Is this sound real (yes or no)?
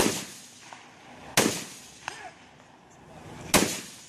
yes